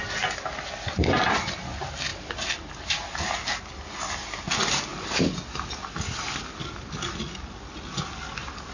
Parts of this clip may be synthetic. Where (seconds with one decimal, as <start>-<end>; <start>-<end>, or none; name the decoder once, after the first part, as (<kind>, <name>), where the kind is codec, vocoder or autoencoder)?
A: none